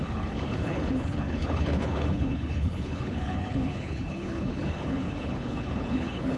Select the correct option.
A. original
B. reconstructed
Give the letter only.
B